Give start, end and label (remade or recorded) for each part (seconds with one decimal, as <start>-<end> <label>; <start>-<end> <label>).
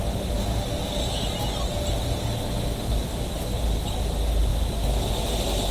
0.0-5.7 recorded